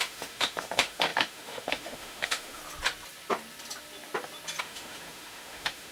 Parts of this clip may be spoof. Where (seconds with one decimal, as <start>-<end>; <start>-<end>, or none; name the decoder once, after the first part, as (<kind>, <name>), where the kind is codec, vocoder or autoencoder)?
0.0-2.6 (autoencoder, DAC-VAE); 4.6-5.9

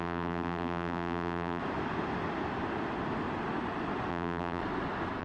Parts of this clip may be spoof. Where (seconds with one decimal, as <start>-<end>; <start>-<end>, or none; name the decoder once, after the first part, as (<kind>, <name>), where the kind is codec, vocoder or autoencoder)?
0.0-1.6 (vocoder, BigVGAN v2); 4.1-4.6